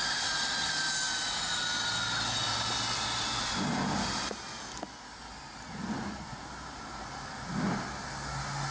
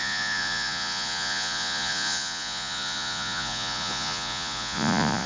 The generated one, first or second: second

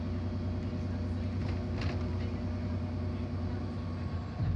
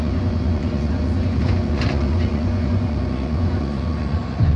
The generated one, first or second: second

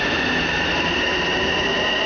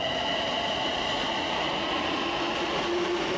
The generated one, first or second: second